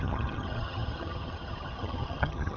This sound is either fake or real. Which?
fake